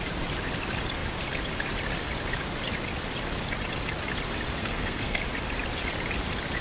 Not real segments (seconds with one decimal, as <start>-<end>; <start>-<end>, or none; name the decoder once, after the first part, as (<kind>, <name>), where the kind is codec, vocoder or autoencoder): 4.6-5.2 (codec, SNAC)